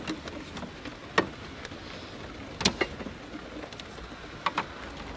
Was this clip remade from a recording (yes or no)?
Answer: no